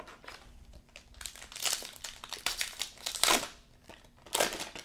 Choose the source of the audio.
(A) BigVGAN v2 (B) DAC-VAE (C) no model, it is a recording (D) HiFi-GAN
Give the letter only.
A